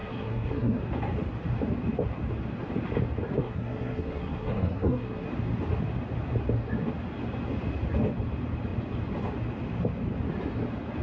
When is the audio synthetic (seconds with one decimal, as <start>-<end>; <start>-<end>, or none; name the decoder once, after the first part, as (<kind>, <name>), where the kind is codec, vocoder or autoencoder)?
0.0-0.8 (codec, SNAC); 3.4-5.3